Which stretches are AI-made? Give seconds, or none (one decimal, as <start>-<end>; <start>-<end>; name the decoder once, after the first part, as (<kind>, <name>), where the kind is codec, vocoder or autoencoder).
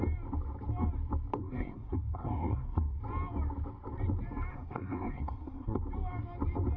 1.4-3.0 (codec, SNAC); 4.5-5.8